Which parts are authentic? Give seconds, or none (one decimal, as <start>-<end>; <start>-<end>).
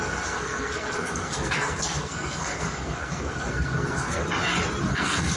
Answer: 4.2-4.9